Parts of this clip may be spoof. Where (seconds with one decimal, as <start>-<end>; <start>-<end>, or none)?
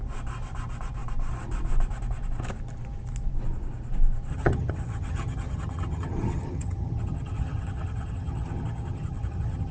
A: 4.3-9.7